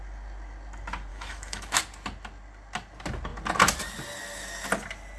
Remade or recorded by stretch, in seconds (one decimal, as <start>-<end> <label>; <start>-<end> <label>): 0.0-1.1 recorded; 1.1-1.8 remade; 1.8-5.2 recorded